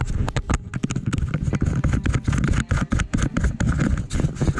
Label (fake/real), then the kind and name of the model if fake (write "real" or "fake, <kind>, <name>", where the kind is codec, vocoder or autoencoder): real